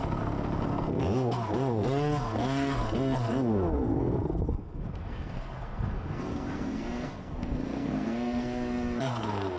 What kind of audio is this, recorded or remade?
remade